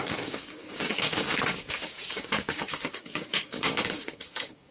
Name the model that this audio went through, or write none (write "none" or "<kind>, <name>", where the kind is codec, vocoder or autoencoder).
codec, DAC